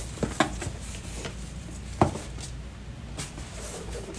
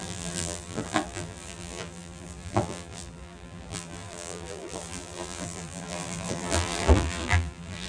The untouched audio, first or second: first